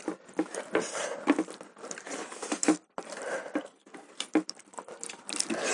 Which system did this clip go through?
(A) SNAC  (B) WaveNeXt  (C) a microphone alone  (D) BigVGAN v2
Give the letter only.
D